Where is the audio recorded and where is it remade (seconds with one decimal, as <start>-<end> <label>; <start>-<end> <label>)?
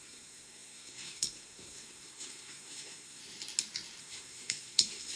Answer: 0.0-3.2 remade; 3.2-4.0 recorded; 4.0-5.2 remade